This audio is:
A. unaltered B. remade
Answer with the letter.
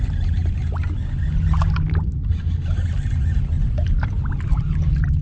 A